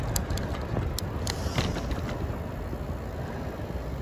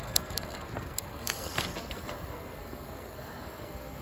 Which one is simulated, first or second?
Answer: second